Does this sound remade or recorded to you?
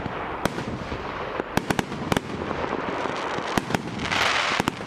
remade